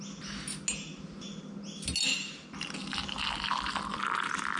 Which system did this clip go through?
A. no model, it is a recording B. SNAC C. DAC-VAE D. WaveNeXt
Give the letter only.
A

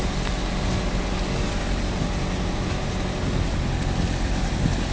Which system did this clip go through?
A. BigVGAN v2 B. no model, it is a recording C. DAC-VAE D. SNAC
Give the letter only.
B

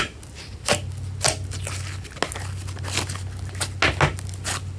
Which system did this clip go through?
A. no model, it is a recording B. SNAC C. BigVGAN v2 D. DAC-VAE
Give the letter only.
A